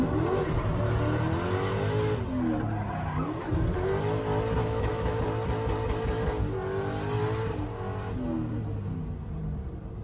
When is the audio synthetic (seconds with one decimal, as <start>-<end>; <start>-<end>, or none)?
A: 4.6-5.2